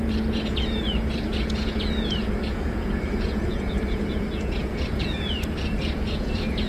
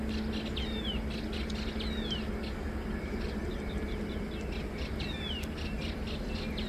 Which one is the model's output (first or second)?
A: first